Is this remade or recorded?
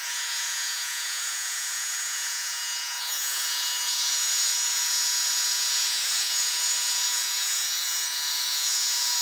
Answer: remade